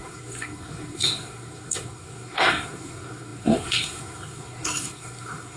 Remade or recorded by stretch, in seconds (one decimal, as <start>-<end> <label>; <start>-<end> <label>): 0.0-5.6 remade